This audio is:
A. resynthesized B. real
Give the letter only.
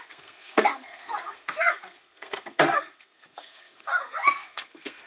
A